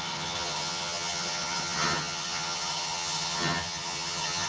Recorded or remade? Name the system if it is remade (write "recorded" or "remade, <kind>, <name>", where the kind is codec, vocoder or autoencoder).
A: remade, vocoder, HiFi-GAN